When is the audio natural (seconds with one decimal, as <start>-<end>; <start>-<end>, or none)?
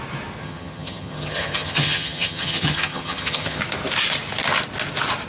0.0-0.4; 3.6-5.3